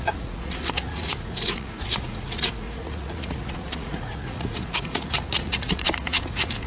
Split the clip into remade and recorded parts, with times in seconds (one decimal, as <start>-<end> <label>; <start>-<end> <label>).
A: 0.0-6.7 remade